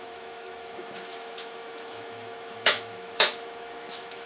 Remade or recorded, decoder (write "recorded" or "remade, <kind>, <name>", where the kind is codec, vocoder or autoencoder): remade, autoencoder, DAC-VAE